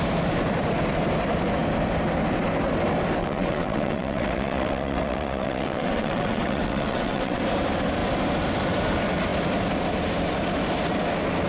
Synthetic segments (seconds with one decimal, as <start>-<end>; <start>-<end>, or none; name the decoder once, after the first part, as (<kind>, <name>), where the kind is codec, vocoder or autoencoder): 3.2-7.4 (vocoder, WaveNeXt)